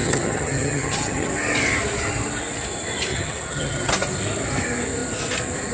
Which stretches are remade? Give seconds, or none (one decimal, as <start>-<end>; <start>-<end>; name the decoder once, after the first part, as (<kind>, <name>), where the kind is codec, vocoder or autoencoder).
0.0-1.3 (vocoder, HiFi-GAN); 3.1-3.9